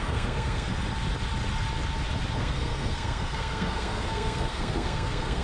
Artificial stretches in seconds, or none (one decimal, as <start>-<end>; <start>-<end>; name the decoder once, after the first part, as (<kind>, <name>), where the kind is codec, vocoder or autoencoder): 0.0-0.7 (codec, SNAC); 2.4-5.4